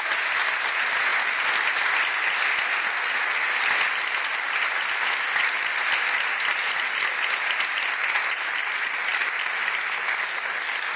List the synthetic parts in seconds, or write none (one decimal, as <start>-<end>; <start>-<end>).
none